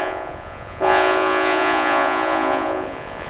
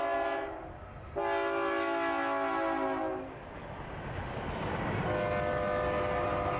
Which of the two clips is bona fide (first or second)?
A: second